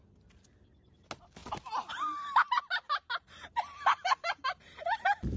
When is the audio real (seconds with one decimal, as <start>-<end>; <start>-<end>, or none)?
0.0-5.4